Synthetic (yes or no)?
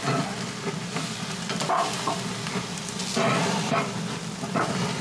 no